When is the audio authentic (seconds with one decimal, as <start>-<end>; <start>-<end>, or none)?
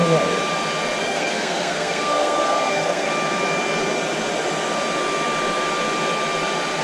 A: 0.0-1.0; 3.1-6.8